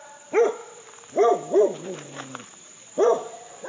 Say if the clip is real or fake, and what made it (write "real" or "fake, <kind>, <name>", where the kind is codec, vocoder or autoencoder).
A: fake, vocoder, BigVGAN v2